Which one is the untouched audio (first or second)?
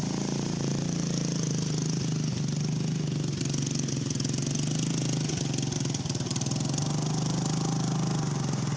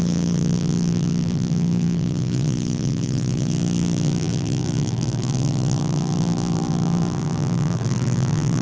first